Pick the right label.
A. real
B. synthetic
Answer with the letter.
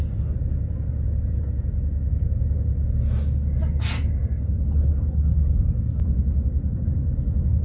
A